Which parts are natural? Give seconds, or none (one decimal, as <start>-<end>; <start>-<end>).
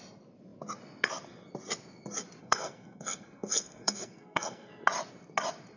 0.0-2.4; 4.7-5.8